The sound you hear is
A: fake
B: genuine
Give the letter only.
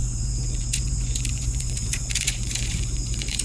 A